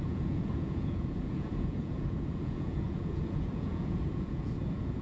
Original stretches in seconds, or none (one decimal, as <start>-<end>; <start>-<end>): none